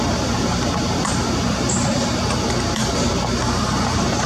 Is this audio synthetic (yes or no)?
yes